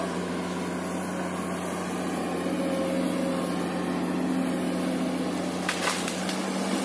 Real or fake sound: real